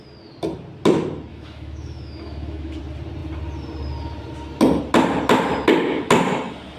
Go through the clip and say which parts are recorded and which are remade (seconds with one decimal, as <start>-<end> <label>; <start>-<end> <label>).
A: 0.0-1.3 recorded; 1.3-2.8 remade; 2.8-6.8 recorded